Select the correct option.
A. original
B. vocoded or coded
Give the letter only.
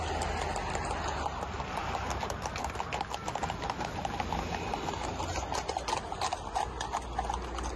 A